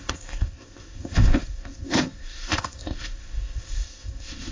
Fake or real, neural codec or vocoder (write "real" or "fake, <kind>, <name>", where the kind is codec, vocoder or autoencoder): fake, codec, ZipCodec